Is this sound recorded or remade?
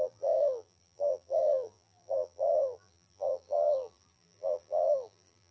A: remade